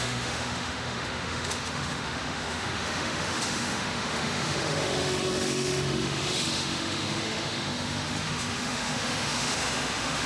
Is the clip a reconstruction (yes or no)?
yes